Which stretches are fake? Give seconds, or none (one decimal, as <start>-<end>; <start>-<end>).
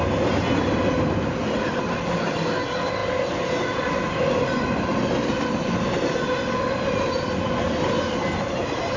none